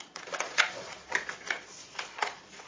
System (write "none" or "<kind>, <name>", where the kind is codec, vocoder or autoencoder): vocoder, Vocos